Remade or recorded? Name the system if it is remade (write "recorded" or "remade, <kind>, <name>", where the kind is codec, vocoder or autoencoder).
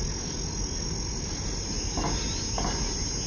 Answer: recorded